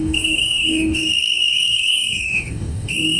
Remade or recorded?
remade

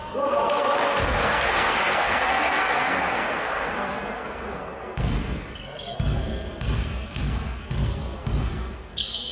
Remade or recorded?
remade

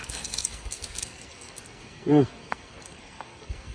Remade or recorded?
remade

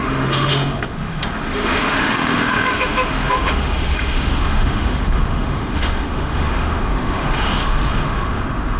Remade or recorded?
remade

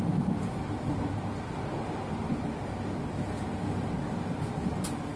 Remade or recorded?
recorded